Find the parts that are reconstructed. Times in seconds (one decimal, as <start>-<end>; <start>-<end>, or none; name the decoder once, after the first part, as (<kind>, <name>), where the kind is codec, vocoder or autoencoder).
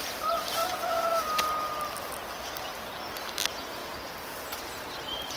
3.8-5.4 (vocoder, BigVGAN v2)